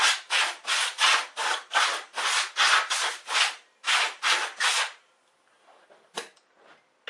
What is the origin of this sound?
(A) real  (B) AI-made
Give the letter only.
A